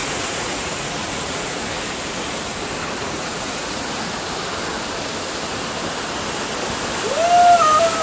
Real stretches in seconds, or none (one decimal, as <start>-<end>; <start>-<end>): 1.6-3.0; 4.0-8.0